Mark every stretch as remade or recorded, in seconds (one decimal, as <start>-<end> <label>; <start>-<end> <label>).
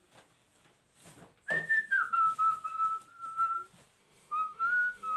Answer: 0.0-4.0 recorded; 4.0-5.2 remade